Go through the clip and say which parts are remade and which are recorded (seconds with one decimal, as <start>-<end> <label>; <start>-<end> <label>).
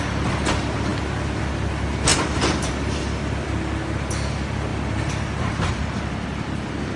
0.0-2.1 recorded; 2.1-2.7 remade; 2.7-7.0 recorded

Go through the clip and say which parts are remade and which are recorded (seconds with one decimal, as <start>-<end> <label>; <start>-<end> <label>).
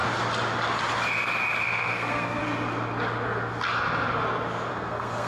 0.0-1.6 recorded; 1.6-2.4 remade; 2.4-4.7 recorded; 4.7-5.3 remade